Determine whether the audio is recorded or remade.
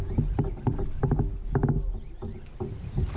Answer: recorded